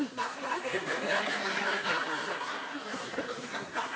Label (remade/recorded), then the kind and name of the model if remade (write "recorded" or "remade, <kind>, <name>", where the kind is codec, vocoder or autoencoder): remade, codec, SNAC